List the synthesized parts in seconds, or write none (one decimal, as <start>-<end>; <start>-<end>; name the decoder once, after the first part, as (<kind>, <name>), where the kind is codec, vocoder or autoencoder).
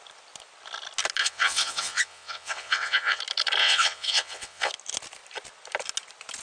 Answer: 1.2-3.2 (vocoder, WaveNeXt); 3.6-4.7